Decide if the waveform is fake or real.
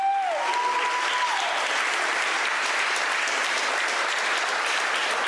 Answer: real